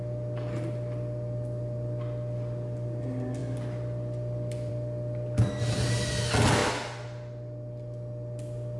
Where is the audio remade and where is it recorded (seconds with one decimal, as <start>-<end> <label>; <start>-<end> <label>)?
0.0-8.8 recorded